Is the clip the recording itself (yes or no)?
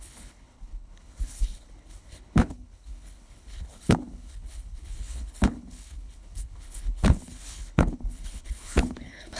no